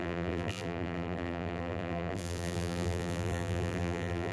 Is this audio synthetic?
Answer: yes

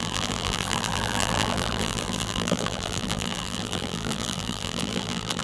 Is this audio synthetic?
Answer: yes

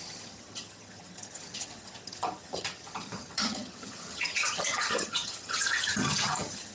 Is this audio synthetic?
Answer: yes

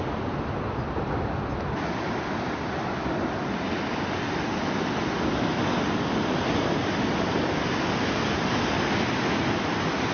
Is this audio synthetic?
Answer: no